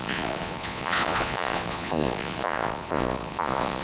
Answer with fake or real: fake